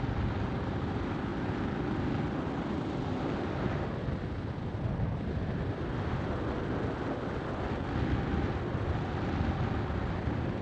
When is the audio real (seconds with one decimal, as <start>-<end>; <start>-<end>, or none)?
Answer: 0.0-10.6